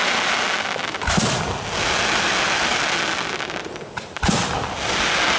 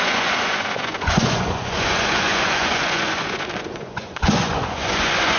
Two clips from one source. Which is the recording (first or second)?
first